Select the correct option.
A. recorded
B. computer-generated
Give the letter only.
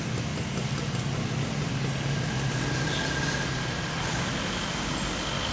A